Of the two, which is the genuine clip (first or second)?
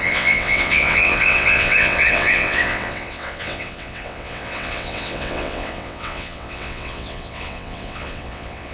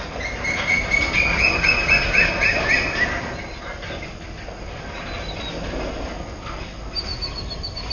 second